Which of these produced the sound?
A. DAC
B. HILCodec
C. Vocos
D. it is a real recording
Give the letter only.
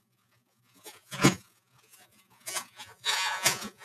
C